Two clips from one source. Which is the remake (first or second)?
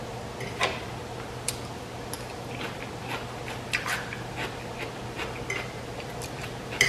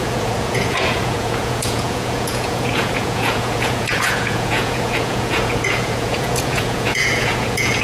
second